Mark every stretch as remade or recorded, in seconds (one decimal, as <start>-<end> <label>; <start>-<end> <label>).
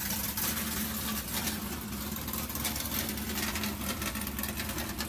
0.0-5.1 recorded